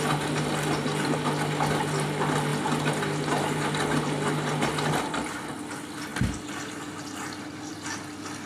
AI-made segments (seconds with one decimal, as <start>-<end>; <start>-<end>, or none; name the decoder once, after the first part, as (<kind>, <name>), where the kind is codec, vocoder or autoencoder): none